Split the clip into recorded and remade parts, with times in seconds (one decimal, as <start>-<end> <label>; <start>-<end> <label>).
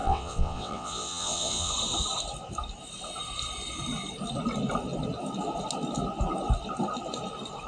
0.0-1.7 remade; 1.7-7.7 recorded